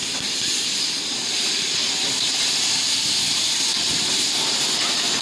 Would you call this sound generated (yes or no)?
yes